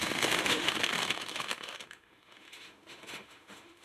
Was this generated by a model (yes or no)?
yes